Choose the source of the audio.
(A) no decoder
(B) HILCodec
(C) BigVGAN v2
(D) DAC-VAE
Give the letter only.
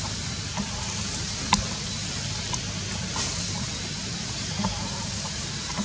A